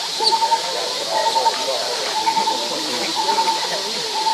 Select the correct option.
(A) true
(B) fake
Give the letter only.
B